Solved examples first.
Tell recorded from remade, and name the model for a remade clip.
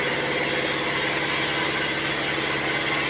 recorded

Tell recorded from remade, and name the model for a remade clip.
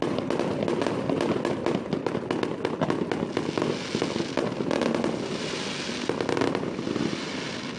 recorded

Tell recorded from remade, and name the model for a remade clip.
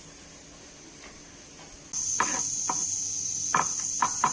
recorded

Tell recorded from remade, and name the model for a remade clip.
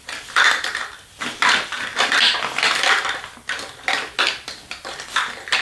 recorded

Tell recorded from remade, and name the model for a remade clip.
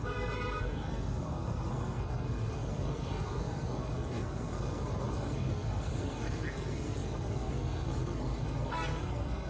remade, codec, SNAC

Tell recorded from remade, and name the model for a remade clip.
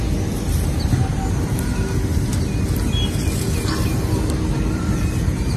recorded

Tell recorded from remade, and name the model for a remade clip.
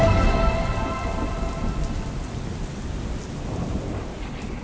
recorded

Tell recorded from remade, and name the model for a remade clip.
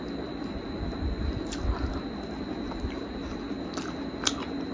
recorded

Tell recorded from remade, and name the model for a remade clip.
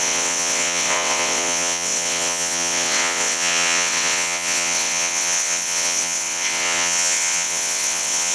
remade, vocoder, WaveNeXt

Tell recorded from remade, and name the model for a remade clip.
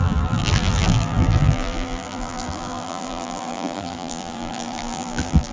remade, vocoder, BigVGAN v2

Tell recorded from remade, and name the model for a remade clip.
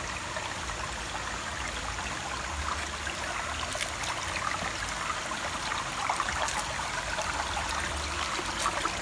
recorded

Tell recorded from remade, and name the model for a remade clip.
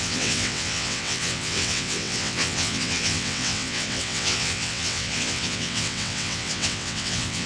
remade, vocoder, WaveNeXt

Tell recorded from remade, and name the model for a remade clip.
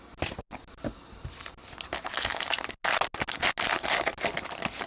recorded